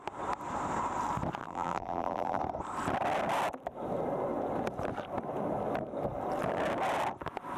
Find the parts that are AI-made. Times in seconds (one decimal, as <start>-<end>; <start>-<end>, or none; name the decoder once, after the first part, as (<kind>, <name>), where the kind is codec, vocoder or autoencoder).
1.4-2.4 (vocoder, BigVGAN v2)